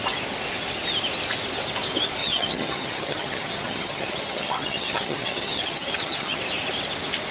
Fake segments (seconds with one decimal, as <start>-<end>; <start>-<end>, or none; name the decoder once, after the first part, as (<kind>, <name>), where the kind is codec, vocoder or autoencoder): 2.2-6.4 (vocoder, HiFi-GAN)